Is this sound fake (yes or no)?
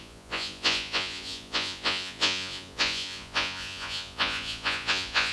yes